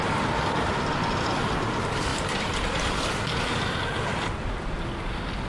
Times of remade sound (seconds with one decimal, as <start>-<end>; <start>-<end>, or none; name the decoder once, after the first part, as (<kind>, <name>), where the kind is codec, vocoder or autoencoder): 2.1-3.4 (vocoder, BigVGAN v2)